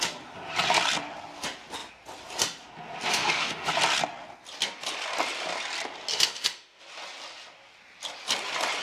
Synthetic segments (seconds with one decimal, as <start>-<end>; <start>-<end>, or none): 3.1-3.7; 6.1-6.8